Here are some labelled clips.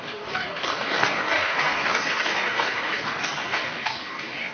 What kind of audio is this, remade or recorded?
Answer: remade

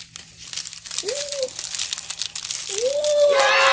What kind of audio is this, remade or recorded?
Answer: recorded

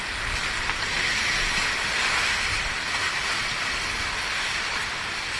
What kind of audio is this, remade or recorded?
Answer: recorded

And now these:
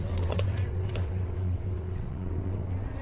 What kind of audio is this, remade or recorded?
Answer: remade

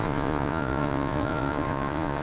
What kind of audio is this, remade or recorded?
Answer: remade